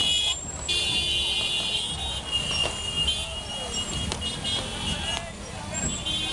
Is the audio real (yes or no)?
yes